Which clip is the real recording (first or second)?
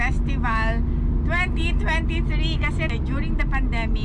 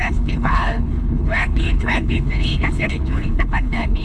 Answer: first